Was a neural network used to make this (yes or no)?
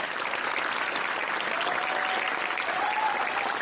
no